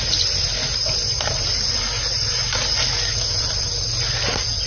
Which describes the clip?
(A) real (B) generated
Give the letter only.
A